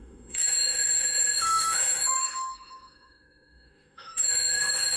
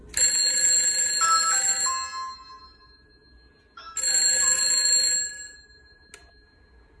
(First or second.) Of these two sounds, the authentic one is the second